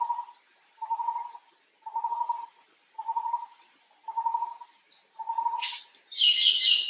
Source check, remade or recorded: recorded